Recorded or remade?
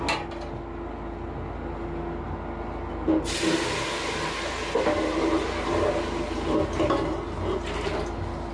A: recorded